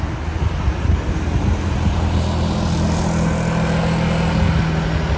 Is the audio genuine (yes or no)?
yes